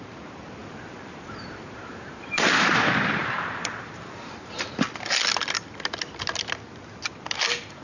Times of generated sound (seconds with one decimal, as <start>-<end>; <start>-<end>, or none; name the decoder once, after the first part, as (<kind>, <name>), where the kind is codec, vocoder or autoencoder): 0.6-2.7 (vocoder, BigVGAN v2); 3.2-4.6